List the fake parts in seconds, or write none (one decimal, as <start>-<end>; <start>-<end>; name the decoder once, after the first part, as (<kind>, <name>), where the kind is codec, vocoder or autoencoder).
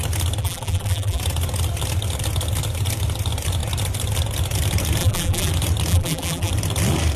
0.4-1.2 (vocoder, BigVGAN v2); 5.0-5.5; 5.9-6.5